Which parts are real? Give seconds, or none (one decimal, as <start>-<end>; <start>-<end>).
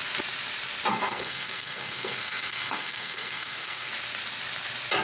0.0-0.9; 3.9-5.0